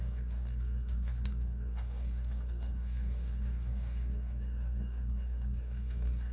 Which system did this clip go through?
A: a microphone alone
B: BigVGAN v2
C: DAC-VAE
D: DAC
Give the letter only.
D